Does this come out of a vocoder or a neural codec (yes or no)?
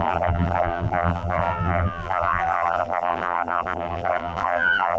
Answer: yes